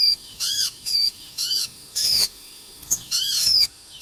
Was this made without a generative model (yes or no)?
no